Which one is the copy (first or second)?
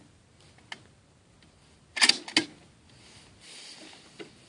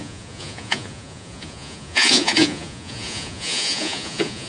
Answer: second